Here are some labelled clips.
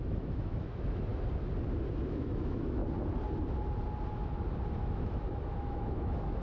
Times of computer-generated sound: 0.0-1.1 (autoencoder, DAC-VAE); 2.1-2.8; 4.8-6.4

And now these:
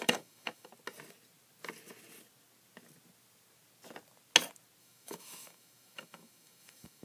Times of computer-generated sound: 0.0-0.7 (autoencoder, DAC-VAE); 4.8-7.0

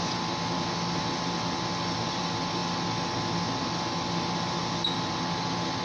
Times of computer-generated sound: none

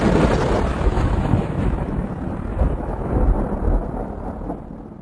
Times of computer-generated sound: 0.7-2.1 (autoencoder, DAC-VAE); 2.5-3.1

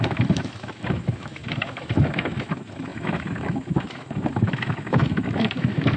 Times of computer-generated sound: 0.0-6.0 (autoencoder, DAC-VAE)

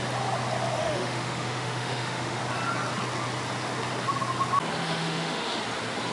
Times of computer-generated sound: 0.8-2.4 (autoencoder, DAC-VAE); 4.8-5.6